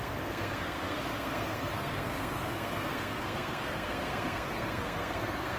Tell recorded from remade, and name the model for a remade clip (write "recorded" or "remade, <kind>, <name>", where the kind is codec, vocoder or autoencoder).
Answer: remade, codec, SNAC